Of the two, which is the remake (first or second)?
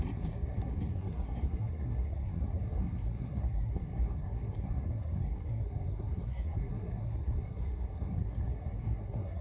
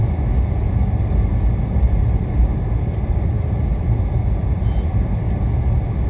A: first